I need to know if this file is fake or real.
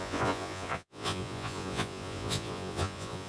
fake